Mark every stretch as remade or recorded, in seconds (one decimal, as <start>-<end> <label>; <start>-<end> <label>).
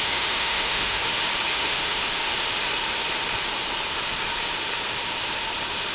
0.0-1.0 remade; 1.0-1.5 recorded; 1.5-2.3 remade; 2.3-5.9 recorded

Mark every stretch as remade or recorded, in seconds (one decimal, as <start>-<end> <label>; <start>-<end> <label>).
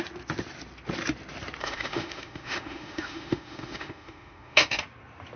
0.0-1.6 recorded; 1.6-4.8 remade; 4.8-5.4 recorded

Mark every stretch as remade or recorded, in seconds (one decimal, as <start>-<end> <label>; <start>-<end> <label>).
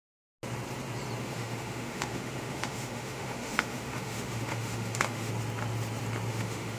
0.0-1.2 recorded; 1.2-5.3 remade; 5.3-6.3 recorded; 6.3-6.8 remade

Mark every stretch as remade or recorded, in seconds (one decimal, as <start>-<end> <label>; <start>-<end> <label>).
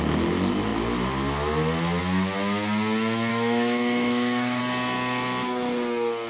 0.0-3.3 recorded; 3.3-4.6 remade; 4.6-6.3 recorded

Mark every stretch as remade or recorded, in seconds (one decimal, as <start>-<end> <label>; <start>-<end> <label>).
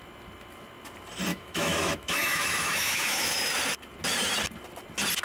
0.0-1.3 recorded; 1.3-3.5 remade; 3.5-5.2 recorded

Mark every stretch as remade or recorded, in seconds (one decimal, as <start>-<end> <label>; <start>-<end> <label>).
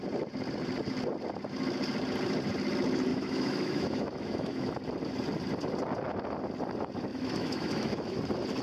0.0-3.1 recorded; 3.1-4.7 remade; 4.7-7.1 recorded; 7.1-8.2 remade; 8.2-8.6 recorded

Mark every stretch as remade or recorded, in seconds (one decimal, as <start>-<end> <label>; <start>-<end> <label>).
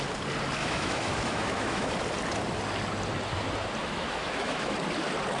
0.0-0.6 recorded; 0.6-1.9 remade; 1.9-3.8 recorded; 3.8-4.8 remade; 4.8-5.4 recorded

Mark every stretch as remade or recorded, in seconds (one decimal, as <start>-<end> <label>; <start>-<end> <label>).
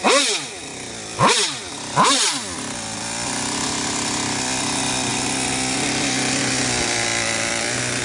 0.0-8.0 recorded